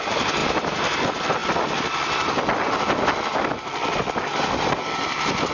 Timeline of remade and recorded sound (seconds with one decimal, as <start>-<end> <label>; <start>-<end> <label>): 0.0-0.4 recorded; 0.4-1.0 remade; 1.0-5.5 recorded